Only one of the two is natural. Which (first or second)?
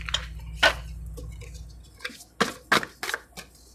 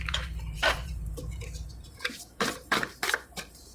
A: first